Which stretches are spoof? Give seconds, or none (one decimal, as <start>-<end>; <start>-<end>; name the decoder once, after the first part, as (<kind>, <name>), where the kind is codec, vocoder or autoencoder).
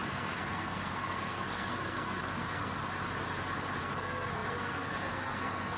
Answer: 0.0-2.8 (codec, SNAC); 3.8-5.8